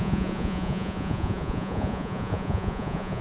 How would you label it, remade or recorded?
remade